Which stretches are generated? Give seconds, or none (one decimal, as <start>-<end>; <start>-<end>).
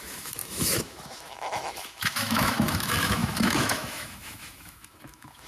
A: 0.0-5.5